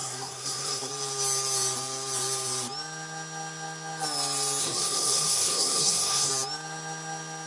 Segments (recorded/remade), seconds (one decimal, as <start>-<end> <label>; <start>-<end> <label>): 0.0-0.9 remade; 0.9-4.6 recorded; 4.6-6.3 remade; 6.3-7.5 recorded